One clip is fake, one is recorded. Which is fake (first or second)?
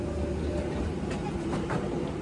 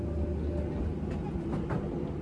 first